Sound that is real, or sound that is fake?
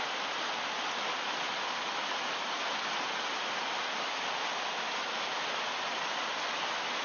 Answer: real